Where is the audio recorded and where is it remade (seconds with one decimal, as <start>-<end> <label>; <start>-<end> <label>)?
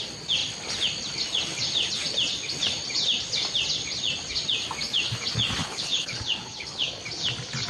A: 0.0-5.6 recorded; 5.6-7.0 remade; 7.0-7.7 recorded